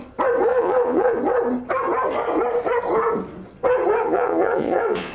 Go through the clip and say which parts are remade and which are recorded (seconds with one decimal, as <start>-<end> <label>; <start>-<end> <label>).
0.0-0.5 recorded; 0.5-1.2 remade; 1.2-4.0 recorded; 4.0-5.1 remade